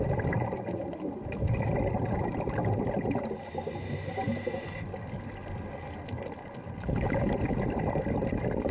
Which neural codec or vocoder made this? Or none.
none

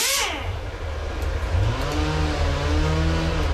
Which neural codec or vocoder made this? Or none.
none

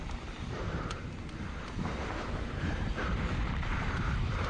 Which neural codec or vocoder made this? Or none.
vocoder, BigVGAN v2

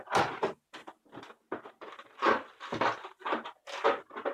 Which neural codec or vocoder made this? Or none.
none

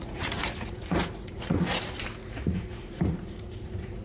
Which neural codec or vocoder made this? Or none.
vocoder, Vocos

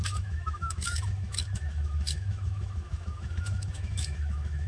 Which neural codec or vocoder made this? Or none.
autoencoder, DAC-VAE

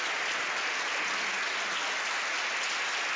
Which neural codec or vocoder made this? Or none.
none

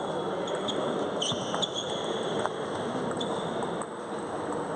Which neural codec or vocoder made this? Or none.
none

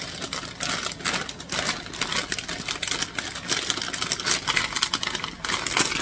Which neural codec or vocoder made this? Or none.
none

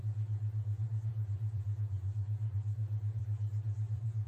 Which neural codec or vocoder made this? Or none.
vocoder, Vocos